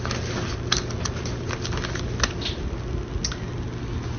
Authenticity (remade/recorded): recorded